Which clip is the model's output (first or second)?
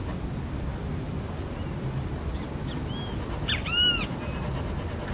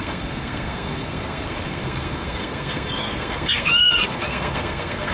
second